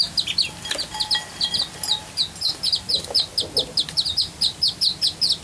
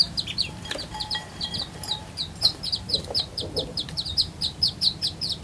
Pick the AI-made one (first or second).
second